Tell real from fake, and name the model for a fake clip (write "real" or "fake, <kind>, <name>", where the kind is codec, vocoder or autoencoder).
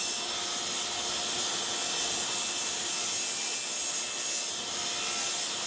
real